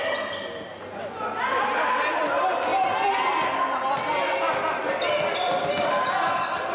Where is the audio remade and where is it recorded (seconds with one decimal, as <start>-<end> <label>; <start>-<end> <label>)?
0.0-6.7 recorded